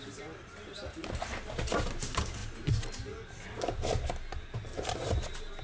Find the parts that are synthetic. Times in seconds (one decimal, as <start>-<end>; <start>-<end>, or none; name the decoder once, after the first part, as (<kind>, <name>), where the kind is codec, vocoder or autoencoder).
none